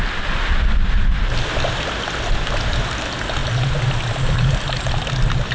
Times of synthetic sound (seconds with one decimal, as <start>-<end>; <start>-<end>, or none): none